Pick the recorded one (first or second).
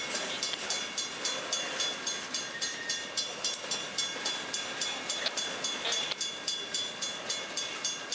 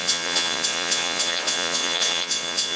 first